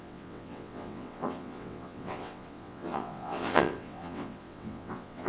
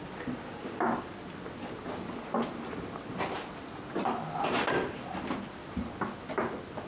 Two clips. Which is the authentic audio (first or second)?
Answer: second